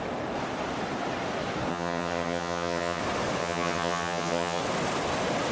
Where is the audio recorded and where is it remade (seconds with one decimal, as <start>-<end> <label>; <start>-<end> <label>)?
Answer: 0.0-1.7 recorded; 1.7-3.0 remade; 3.0-3.4 recorded; 3.4-4.6 remade; 4.6-5.5 recorded